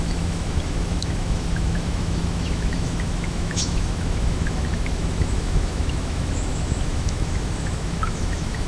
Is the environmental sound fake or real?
fake